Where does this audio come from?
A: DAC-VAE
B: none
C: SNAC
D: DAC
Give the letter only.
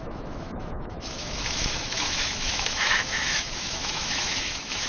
A